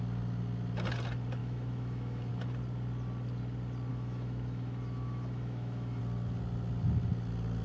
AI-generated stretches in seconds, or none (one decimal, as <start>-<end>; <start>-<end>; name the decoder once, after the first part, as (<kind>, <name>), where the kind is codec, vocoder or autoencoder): 1.4-2.3 (autoencoder, DAC-VAE); 3.9-6.0